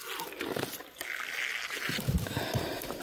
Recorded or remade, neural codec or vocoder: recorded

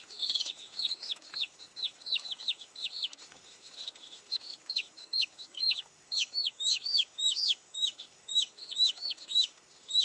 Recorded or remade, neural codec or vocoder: remade, autoencoder, DAC-VAE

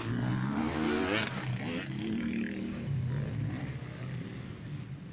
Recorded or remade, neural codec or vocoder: recorded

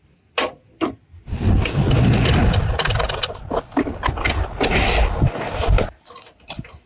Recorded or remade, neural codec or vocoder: recorded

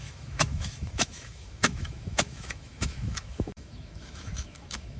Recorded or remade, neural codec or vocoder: remade, autoencoder, DAC-VAE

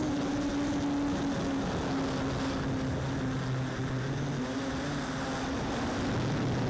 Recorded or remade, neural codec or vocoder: recorded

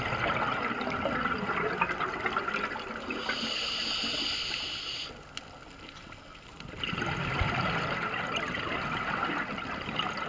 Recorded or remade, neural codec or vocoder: recorded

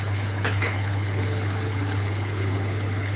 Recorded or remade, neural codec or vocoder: remade, codec, HILCodec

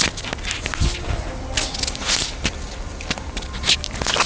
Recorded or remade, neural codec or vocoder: recorded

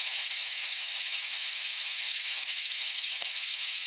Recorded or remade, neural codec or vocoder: remade, autoencoder, DAC-VAE